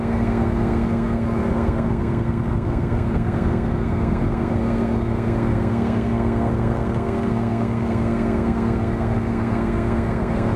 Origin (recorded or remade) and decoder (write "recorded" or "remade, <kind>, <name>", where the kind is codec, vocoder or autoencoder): remade, codec, SNAC